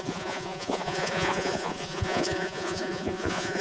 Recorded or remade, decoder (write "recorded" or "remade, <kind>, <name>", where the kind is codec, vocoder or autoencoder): remade, vocoder, Vocos